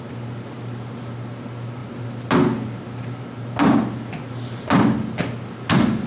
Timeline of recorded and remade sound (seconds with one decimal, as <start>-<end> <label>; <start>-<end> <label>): 0.0-6.1 recorded